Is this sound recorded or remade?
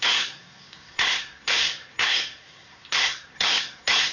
remade